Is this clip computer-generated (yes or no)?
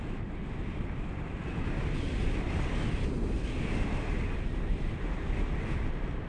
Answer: no